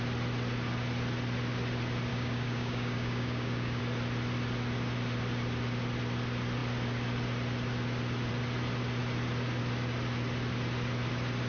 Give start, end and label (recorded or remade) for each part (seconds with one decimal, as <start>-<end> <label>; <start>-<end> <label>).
0.0-2.1 recorded; 2.1-3.8 remade; 3.8-11.5 recorded